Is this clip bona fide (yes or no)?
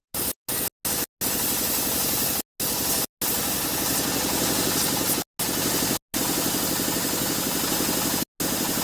yes